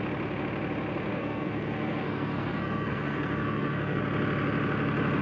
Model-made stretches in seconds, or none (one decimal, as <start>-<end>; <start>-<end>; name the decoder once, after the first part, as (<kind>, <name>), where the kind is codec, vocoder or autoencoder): 1.1-4.0 (codec, SNAC)